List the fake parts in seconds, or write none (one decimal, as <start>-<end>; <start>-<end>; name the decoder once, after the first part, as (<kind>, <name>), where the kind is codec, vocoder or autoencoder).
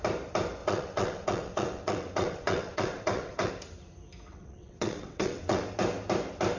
0.6-3.5 (vocoder, WaveNeXt); 4.3-5.6